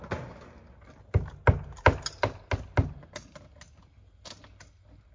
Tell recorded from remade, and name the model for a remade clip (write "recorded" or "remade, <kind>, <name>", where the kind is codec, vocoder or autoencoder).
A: recorded